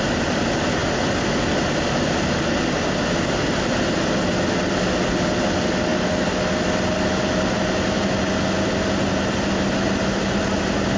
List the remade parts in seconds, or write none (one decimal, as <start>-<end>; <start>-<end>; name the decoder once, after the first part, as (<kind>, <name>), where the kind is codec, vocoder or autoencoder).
none